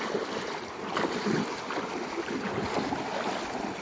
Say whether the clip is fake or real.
real